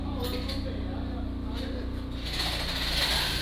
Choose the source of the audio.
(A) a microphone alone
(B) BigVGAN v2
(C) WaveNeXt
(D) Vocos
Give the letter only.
A